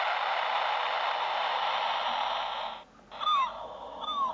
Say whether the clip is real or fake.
real